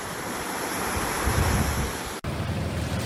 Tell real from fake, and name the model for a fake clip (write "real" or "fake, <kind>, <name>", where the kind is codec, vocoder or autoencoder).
fake, vocoder, BigVGAN v2